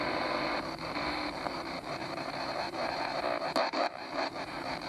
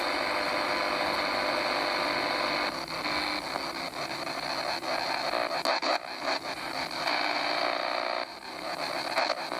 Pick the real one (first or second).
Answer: second